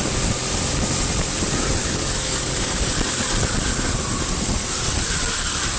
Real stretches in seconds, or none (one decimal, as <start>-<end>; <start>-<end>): 0.0-1.8; 2.9-5.8